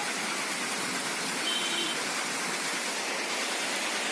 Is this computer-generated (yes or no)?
no